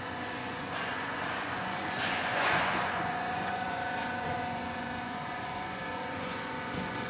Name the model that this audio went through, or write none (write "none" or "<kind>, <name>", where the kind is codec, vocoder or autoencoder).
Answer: vocoder, Vocos